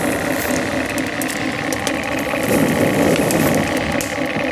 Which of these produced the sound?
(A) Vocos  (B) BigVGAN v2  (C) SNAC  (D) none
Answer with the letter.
D